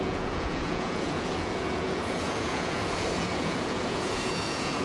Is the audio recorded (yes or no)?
no